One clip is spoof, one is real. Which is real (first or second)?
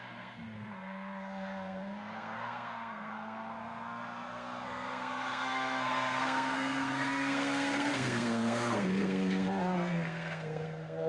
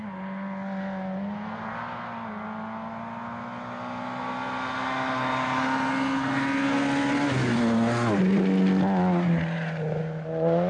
second